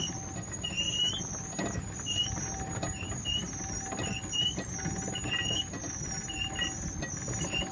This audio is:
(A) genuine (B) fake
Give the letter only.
A